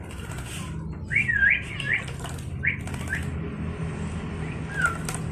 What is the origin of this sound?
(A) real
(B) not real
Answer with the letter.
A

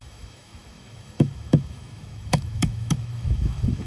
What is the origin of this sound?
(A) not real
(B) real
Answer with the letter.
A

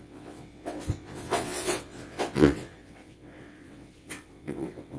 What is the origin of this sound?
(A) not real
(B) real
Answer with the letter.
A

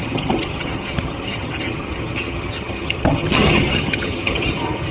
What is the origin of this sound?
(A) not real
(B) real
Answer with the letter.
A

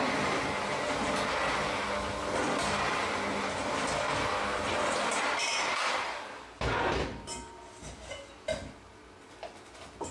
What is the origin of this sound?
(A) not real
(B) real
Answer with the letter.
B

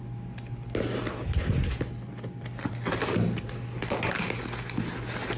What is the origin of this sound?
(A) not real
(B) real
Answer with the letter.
B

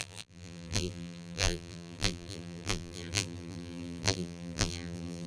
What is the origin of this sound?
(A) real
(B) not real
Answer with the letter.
B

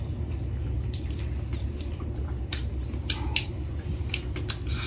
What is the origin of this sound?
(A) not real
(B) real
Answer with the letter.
B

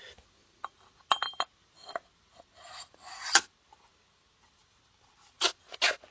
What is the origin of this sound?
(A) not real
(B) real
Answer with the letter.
B